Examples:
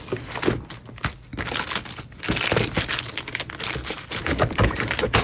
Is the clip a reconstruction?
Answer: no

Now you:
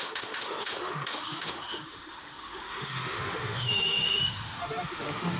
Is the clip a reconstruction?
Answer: yes